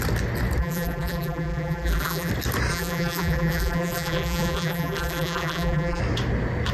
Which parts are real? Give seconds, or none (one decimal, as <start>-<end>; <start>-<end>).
0.0-0.6; 2.3-2.7; 6.0-6.7